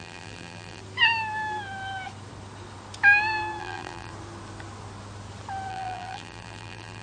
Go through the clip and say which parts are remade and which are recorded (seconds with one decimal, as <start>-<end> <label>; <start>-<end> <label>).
0.0-0.8 remade; 0.8-3.6 recorded; 3.6-4.1 remade; 4.1-5.7 recorded; 5.7-7.0 remade